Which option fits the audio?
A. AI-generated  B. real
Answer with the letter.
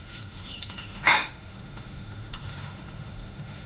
A